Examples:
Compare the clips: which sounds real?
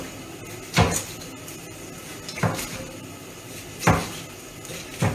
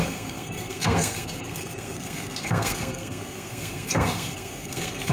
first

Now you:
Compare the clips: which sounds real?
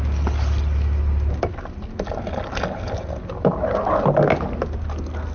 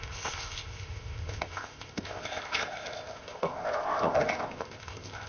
first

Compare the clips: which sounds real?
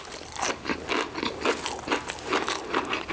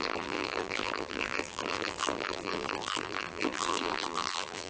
first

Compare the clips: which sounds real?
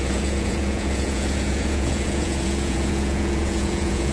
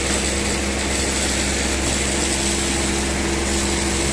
second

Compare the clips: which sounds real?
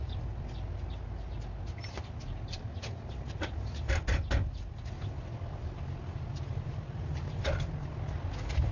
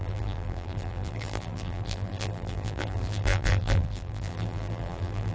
first